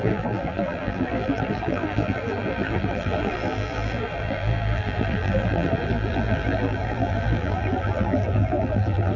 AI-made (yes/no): yes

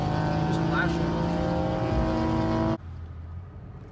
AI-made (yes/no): no